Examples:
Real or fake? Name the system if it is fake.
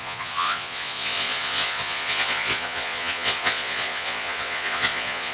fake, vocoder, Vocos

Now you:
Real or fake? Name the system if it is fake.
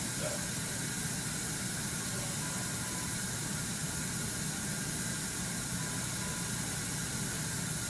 real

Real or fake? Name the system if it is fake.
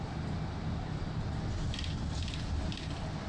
real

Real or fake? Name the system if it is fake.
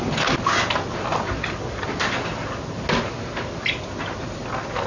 real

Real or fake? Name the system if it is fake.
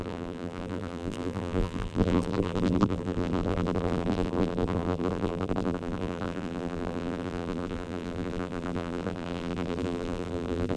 fake, vocoder, BigVGAN v2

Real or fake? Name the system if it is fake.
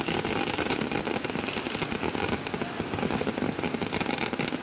real